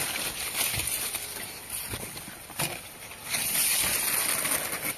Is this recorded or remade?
recorded